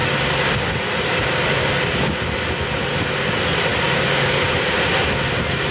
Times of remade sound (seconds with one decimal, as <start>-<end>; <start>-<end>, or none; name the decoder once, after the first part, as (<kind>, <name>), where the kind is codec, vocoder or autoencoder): none

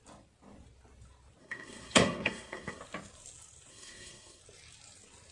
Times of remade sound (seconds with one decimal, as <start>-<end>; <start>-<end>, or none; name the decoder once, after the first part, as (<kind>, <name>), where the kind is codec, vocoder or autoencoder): 1.4-2.8 (codec, SNAC); 3.7-4.4

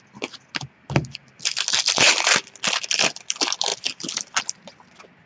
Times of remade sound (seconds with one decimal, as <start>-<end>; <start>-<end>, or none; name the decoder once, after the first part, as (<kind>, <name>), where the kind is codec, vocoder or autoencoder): none

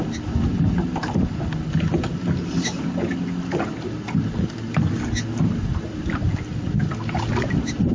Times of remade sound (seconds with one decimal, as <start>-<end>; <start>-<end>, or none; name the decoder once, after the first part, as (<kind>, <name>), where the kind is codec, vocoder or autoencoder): none

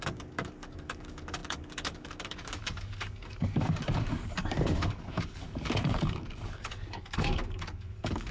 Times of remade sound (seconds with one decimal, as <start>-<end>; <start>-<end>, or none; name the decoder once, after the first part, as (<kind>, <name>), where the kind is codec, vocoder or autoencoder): 0.0-8.3 (codec, DAC)

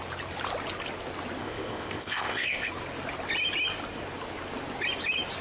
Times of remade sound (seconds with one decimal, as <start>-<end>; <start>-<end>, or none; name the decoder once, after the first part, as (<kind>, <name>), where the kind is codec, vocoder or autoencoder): 1.4-2.7 (codec, ZipCodec)